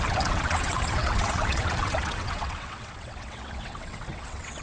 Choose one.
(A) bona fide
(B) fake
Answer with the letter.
B